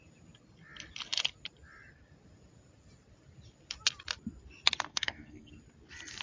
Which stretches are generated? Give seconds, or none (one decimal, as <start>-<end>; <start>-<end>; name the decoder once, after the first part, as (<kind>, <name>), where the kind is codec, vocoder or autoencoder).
4.9-5.5 (codec, SNAC)